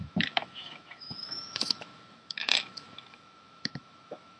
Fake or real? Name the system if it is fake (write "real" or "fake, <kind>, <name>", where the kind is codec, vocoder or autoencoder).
fake, autoencoder, DAC-VAE